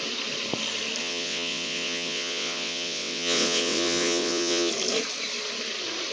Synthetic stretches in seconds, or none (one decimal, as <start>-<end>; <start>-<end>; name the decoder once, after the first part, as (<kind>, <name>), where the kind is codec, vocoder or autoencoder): 1.0-4.7 (vocoder, WaveNeXt)